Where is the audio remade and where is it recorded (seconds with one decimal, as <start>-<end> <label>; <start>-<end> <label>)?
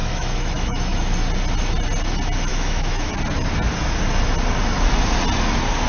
0.0-1.0 remade; 1.0-2.5 recorded; 2.5-3.1 remade; 3.1-5.9 recorded